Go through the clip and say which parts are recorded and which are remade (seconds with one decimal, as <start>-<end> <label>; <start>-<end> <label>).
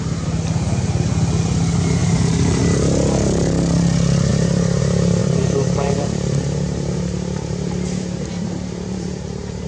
0.0-2.0 recorded; 2.0-2.6 remade; 2.6-4.3 recorded; 4.3-4.8 remade; 4.8-5.2 recorded; 5.2-9.7 remade